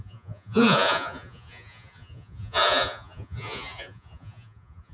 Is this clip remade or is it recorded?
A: remade